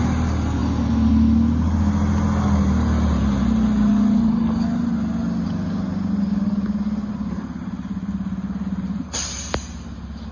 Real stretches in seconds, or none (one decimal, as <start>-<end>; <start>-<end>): 0.0-10.3